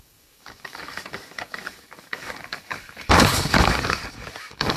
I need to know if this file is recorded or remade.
remade